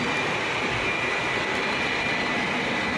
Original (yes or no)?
yes